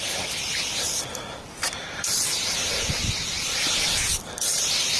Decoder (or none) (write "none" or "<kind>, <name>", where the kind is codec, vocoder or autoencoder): none